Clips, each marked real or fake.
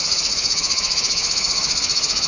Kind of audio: fake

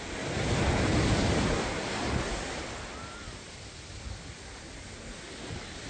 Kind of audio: real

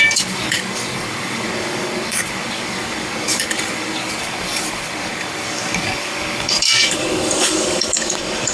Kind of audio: fake